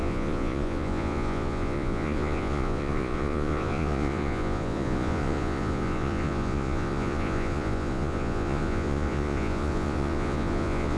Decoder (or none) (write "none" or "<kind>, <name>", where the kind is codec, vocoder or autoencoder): vocoder, Vocos